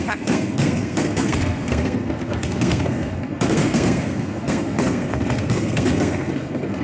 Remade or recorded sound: remade